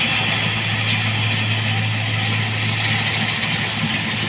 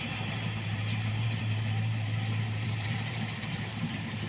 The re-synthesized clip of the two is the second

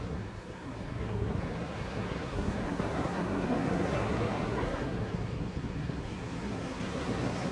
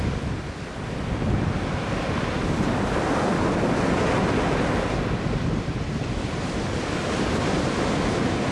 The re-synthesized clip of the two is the first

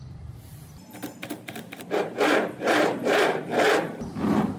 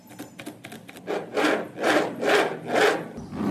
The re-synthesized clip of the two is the first